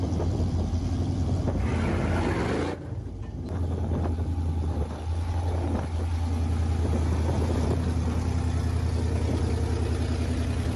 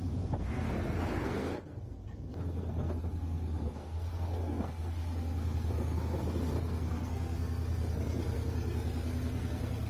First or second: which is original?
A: first